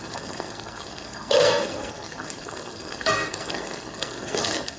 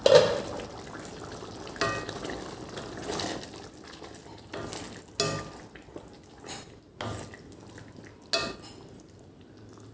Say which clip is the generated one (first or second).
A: first